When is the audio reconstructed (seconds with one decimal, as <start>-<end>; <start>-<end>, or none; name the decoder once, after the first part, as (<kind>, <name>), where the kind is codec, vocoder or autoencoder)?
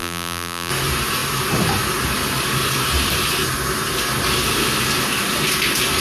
0.0-0.7 (vocoder, BigVGAN v2)